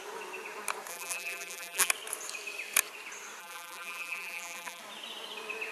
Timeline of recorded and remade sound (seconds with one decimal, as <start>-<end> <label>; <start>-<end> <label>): 0.0-0.9 recorded; 0.9-1.9 remade; 1.9-3.4 recorded; 3.4-4.8 remade; 4.8-5.7 recorded